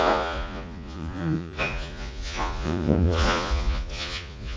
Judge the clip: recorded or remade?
remade